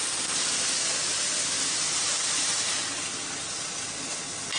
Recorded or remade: recorded